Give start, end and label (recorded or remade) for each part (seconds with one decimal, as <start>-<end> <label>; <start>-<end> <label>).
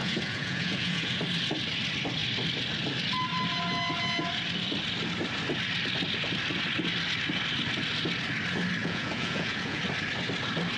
0.0-1.2 remade; 1.2-8.8 recorded; 8.8-9.8 remade; 9.8-10.8 recorded